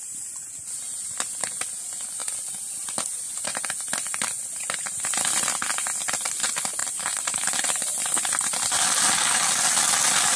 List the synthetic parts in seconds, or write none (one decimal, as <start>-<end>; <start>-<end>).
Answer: 2.2-4.9; 6.8-8.3